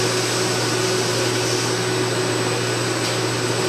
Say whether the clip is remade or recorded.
recorded